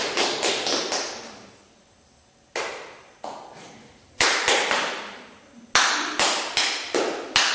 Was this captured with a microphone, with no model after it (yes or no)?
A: yes